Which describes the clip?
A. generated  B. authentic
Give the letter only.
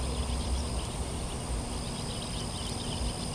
B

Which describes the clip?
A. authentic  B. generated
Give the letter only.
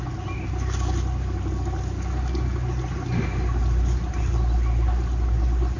A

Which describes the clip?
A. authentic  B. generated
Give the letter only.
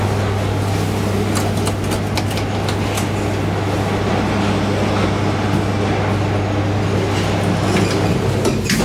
A